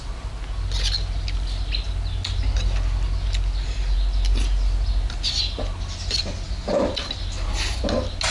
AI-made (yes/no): no